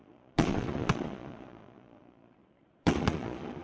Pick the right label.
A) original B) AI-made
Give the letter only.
B